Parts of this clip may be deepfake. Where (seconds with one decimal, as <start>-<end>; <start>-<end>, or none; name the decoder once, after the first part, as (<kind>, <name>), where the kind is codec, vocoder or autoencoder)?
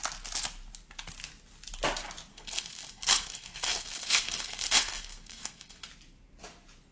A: 2.3-5.9 (codec, SNAC)